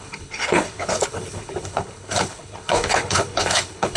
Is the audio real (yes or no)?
no